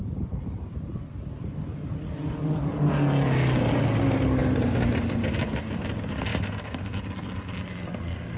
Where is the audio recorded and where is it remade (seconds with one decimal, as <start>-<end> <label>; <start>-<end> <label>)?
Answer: 0.0-4.4 recorded; 4.4-5.6 remade; 5.6-6.3 recorded; 6.3-6.8 remade; 6.8-8.4 recorded